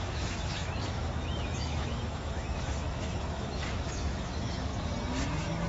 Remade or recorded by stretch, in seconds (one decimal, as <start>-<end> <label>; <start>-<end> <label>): 0.0-4.7 remade; 4.7-5.7 recorded